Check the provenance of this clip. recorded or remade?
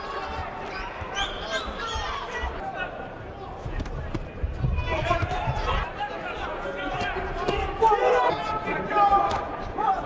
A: recorded